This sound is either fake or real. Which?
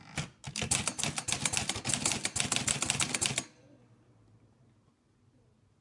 real